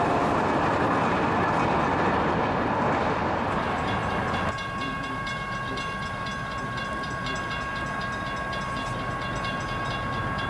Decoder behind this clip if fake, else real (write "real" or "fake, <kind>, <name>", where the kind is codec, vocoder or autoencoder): real